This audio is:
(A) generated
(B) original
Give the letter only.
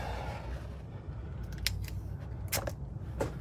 B